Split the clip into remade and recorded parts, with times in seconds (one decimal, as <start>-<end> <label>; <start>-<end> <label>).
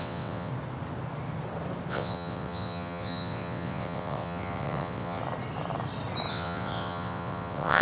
0.0-0.5 remade; 0.5-1.9 recorded; 1.9-5.2 remade; 5.2-6.3 recorded; 6.3-7.8 remade